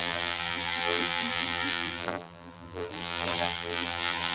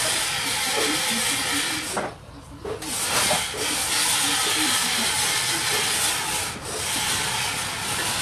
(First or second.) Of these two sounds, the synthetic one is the first